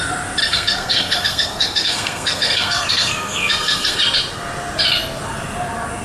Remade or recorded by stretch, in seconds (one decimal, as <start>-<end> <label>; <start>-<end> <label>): 0.0-0.4 recorded; 0.4-4.0 remade; 4.0-6.0 recorded